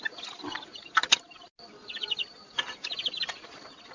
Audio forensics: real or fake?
real